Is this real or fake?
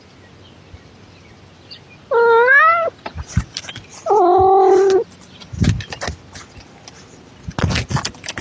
real